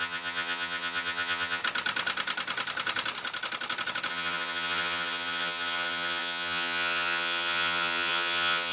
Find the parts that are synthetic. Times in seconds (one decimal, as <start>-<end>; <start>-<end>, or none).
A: 0.0-1.6; 4.1-8.7